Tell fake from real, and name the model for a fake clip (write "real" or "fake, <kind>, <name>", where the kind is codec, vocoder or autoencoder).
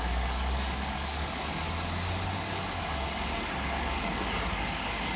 fake, codec, DAC